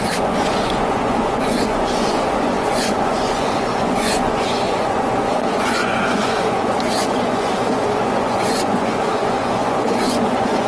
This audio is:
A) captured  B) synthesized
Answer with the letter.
B